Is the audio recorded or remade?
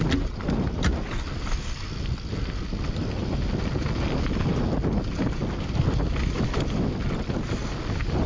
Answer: recorded